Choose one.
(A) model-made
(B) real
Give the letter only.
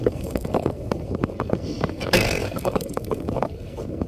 A